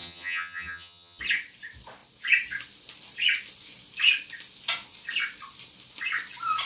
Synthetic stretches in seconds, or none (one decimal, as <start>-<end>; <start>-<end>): 0.0-1.2